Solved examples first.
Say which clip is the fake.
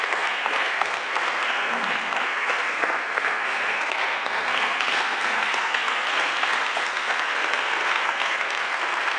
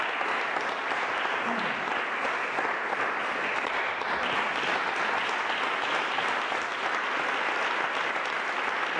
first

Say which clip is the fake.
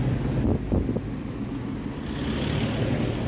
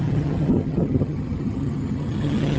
second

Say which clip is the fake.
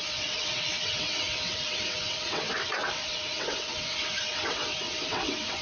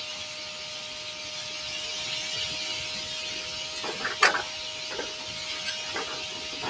first